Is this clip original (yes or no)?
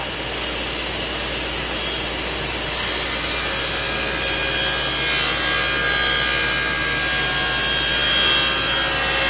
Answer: yes